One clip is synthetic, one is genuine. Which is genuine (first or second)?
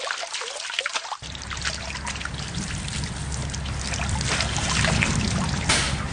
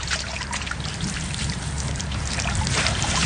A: first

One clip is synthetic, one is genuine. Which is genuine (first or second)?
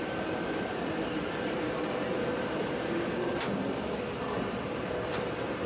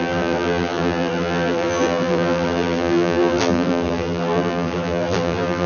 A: first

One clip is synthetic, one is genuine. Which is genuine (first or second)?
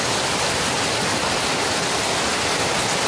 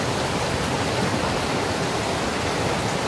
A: first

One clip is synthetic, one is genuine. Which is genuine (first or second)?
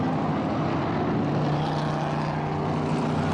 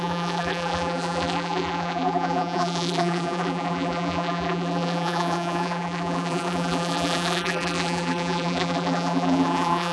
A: first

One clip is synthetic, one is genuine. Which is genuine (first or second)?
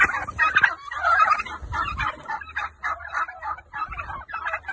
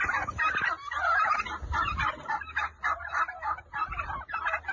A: second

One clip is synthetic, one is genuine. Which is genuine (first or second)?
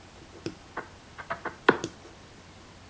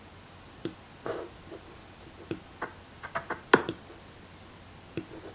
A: second